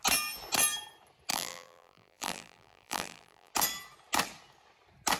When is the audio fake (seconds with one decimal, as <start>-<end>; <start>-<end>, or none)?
1.3-3.5